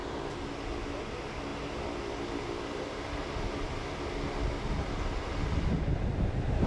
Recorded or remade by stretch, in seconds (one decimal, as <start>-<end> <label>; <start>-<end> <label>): 0.0-6.7 recorded